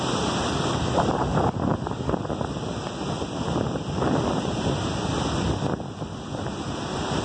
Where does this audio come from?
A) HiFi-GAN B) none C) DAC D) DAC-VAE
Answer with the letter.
B